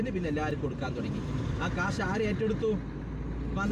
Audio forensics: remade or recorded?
recorded